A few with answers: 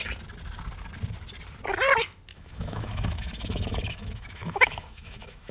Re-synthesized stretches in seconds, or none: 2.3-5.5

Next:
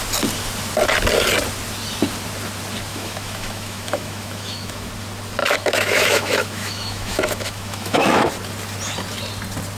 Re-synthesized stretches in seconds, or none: 2.9-4.9; 5.4-8.3

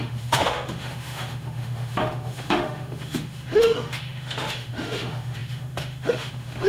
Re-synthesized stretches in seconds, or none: 0.0-6.7